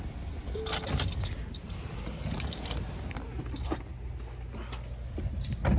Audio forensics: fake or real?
real